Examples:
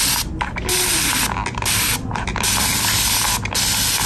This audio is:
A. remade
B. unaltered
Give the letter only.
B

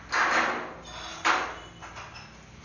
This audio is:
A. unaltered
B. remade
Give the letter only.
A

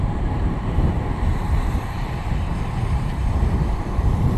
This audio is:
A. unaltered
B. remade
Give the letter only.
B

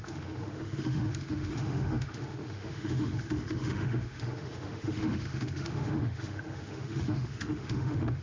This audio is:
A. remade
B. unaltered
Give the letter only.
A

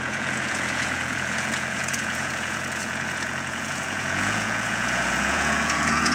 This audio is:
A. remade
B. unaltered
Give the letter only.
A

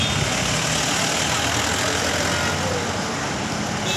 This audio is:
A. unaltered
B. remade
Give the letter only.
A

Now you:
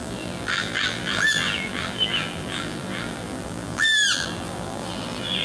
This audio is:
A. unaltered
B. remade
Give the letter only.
B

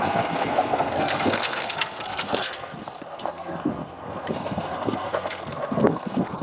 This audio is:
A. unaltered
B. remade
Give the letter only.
B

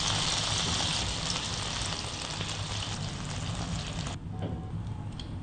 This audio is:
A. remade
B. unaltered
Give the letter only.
B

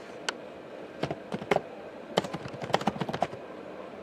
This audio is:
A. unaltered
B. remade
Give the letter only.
A